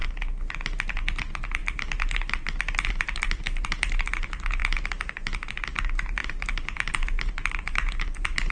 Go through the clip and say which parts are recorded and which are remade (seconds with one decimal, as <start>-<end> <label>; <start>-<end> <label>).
0.0-1.2 recorded; 1.2-1.6 remade; 1.6-2.9 recorded; 2.9-4.6 remade; 4.6-5.8 recorded; 5.8-8.5 remade